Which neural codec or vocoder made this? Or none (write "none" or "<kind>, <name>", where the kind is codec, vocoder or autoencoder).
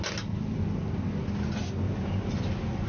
none